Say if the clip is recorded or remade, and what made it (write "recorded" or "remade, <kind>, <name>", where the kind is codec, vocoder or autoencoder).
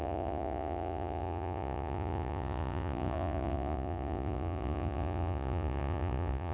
remade, vocoder, Vocos